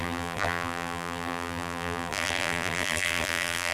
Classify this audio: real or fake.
fake